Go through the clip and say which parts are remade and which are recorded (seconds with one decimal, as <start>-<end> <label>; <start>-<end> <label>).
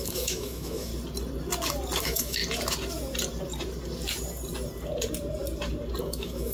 0.0-0.9 remade; 0.9-2.0 recorded; 2.0-2.4 remade; 2.4-6.0 recorded; 6.0-6.5 remade